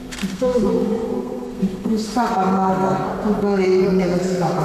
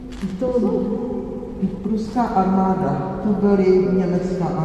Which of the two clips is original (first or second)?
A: second